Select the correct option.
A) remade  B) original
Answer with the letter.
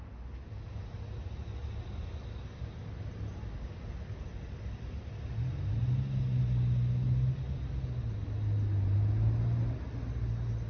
B